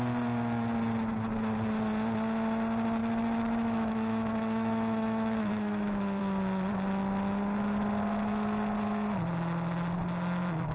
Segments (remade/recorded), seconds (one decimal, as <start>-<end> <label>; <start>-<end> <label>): 0.0-3.0 recorded; 3.0-6.2 remade; 6.2-10.7 recorded